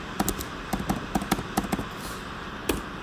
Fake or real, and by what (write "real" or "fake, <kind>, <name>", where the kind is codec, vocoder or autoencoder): real